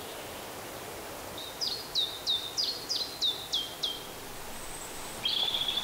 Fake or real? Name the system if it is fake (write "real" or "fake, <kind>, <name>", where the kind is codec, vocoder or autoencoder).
real